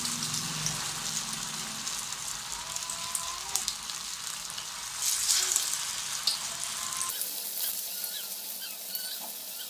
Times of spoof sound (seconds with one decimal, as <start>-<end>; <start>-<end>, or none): none